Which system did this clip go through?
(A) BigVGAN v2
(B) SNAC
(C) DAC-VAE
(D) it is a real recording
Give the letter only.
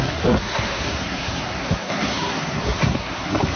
B